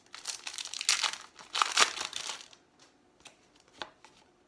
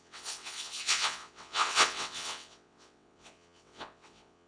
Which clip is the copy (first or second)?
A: second